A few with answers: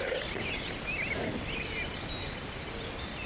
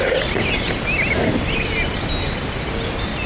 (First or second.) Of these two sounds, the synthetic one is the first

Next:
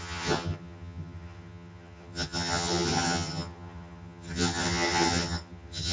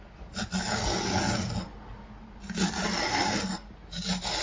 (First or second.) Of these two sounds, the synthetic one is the first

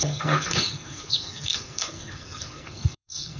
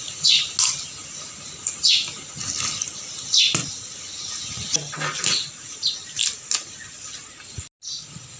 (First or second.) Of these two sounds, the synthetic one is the first